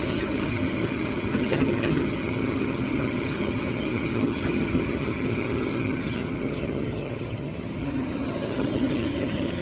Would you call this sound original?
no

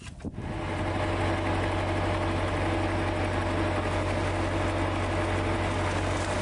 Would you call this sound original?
yes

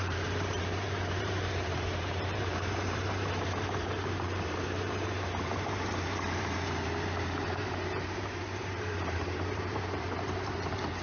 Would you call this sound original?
no